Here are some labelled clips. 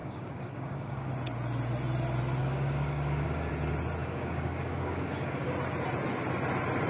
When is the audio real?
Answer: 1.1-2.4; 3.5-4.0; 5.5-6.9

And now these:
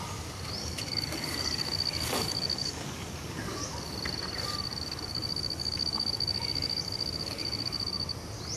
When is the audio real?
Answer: 0.0-0.6; 3.9-4.7; 7.9-8.6